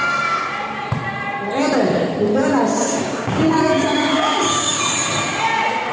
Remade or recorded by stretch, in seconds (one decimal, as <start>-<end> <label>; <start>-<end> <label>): 0.0-2.7 recorded; 2.7-4.8 remade; 4.8-5.9 recorded